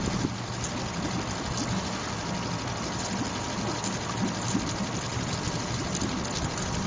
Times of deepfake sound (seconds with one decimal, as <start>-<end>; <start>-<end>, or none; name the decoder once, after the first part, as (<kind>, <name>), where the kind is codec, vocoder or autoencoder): none